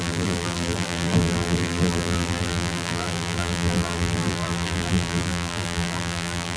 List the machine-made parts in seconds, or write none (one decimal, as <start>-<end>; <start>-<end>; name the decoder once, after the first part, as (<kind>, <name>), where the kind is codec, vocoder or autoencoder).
0.0-6.6 (vocoder, BigVGAN v2)